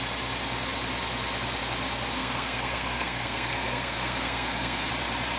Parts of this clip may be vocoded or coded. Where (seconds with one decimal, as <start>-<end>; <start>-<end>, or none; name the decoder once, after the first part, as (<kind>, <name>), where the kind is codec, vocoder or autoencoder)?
2.2-4.9 (codec, SNAC)